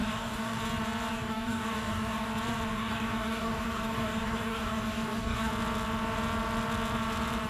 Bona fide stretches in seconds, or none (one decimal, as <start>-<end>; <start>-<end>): 0.6-1.1; 2.3-2.7; 5.5-7.5